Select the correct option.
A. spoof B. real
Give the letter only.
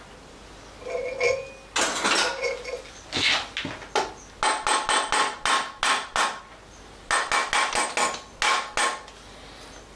B